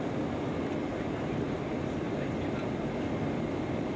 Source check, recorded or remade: recorded